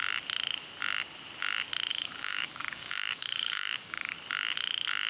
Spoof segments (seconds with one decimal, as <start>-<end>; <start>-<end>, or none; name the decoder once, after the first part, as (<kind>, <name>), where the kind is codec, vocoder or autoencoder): 1.9-4.1 (codec, DAC)